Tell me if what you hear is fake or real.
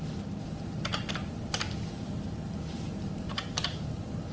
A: fake